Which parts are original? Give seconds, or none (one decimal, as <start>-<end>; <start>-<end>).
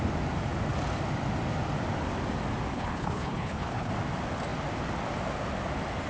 0.0-2.7; 3.9-6.1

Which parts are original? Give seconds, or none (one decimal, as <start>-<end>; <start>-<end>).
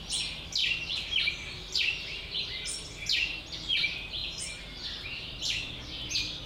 0.0-0.6; 2.4-6.5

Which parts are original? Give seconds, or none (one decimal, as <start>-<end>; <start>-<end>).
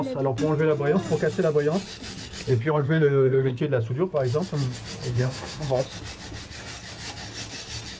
0.0-2.5; 3.6-5.1; 5.8-8.0